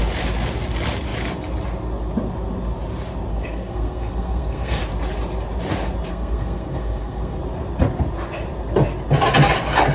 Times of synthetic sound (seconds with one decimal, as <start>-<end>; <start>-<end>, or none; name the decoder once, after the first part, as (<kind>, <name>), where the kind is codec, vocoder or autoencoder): 3.3-4.8 (codec, SNAC); 6.1-7.4